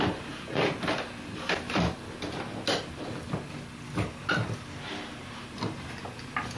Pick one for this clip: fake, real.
real